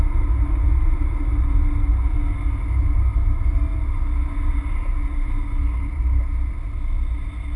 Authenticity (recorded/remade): recorded